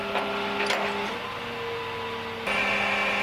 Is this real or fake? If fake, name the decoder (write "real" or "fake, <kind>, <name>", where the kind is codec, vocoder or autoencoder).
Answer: real